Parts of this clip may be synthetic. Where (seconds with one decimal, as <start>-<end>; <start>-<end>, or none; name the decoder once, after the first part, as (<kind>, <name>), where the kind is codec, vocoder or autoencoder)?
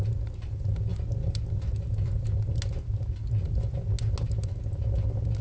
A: none